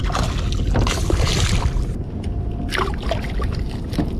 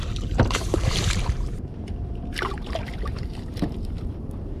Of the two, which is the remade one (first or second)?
second